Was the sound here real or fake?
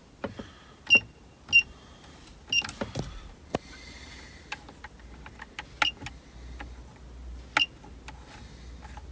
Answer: real